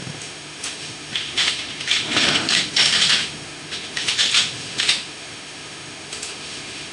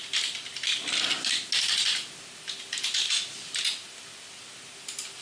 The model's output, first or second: first